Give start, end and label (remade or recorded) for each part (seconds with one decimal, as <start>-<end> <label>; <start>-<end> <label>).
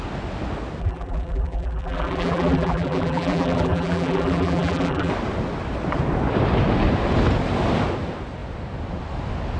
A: 0.0-0.8 recorded; 0.8-5.1 remade; 5.1-9.6 recorded